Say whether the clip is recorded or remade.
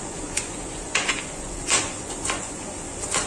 remade